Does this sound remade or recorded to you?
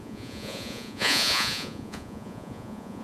remade